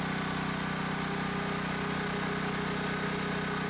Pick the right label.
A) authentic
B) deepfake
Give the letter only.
A